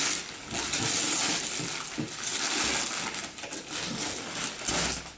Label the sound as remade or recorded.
recorded